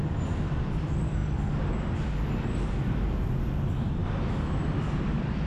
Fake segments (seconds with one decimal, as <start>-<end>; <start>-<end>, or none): 0.0-1.2; 3.5-4.0; 4.6-5.5